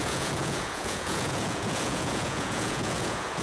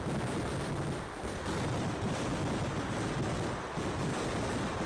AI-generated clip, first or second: first